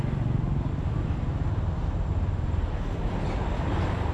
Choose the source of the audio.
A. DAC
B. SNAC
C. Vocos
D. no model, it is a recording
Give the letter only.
D